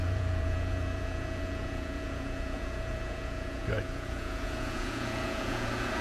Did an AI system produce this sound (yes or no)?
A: yes